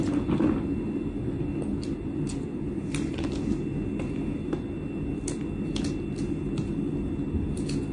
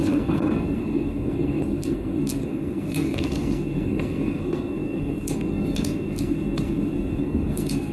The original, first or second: first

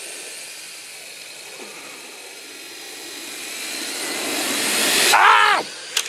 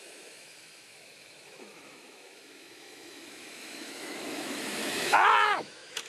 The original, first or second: first